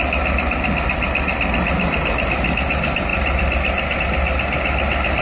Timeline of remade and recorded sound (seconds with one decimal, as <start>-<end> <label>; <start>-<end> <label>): 0.0-5.2 recorded